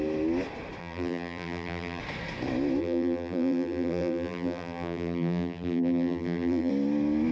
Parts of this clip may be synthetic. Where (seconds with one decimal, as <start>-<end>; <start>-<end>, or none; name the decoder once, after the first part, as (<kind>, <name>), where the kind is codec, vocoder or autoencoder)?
0.8-2.0 (vocoder, BigVGAN v2); 2.8-6.7